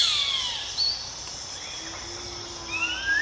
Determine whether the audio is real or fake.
real